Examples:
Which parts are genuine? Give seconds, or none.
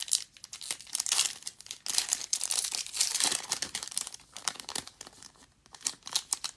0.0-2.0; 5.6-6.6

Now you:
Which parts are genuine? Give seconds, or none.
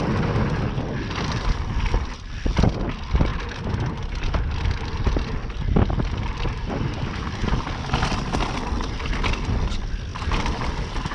0.0-10.1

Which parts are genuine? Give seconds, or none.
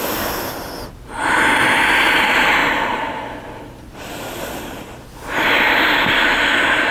0.0-6.9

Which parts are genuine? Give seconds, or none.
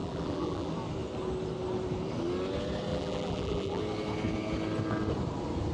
0.7-2.9; 3.8-5.7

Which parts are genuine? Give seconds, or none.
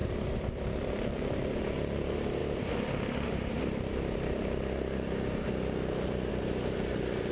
2.4-6.3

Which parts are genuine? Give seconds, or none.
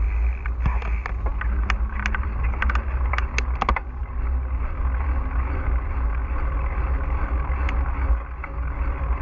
0.0-9.2